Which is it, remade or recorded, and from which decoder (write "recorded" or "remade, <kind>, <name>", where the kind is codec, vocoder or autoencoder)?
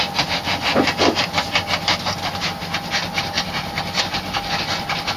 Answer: recorded